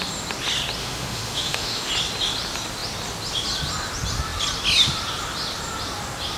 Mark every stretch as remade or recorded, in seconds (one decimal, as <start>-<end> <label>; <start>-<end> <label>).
0.0-0.8 recorded; 0.8-1.9 remade; 1.9-6.4 recorded